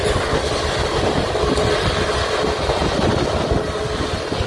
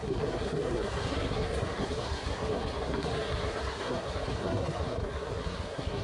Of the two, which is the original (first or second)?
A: first